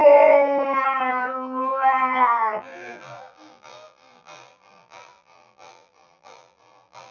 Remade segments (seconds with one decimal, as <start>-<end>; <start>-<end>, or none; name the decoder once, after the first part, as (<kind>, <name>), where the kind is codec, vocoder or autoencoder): 1.1-7.1 (vocoder, BigVGAN v2)